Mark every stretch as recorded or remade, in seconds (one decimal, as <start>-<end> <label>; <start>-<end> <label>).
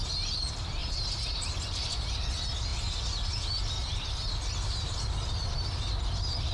0.0-0.8 recorded; 0.8-1.9 remade; 1.9-6.5 recorded